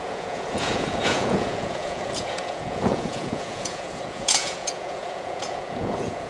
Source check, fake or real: fake